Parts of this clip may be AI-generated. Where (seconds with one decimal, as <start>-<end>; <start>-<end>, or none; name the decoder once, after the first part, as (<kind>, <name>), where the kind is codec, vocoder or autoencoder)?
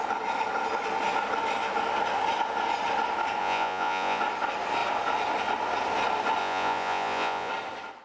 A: 3.4-4.2 (vocoder, Vocos); 6.4-7.5